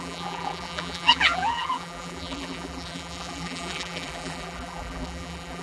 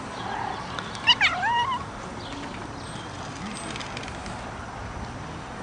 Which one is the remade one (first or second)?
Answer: first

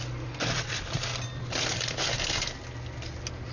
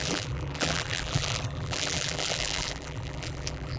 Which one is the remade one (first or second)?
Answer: second